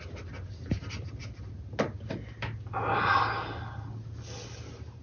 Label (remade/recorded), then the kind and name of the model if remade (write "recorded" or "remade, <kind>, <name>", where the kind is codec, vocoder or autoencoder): recorded